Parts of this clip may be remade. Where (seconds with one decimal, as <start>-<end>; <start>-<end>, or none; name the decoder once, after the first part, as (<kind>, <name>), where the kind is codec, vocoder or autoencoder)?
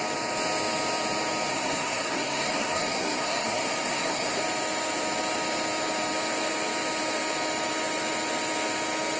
1.5-4.4 (codec, SNAC)